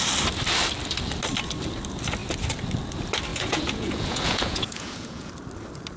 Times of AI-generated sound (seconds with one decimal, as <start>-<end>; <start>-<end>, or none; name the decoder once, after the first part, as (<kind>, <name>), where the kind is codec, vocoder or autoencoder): 3.3-5.3 (vocoder, Vocos)